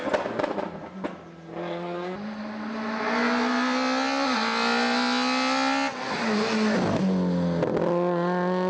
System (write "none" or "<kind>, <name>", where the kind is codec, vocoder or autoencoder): none